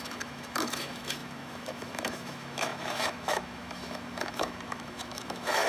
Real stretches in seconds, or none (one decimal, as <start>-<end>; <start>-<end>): none